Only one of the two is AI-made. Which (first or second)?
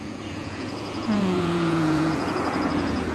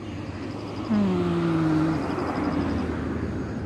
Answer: first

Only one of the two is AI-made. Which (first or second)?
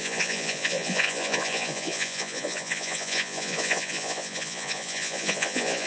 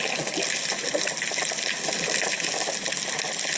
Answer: first